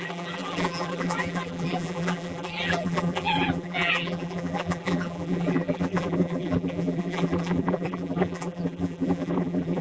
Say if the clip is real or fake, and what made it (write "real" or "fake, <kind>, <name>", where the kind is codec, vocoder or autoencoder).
fake, vocoder, BigVGAN v2